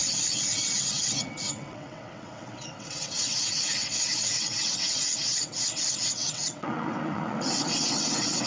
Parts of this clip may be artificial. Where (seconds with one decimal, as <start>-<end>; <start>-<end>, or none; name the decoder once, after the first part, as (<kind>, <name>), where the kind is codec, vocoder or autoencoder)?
0.0-8.5 (vocoder, WaveNeXt)